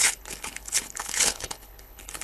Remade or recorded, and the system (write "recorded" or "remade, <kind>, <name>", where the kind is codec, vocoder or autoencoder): remade, codec, HILCodec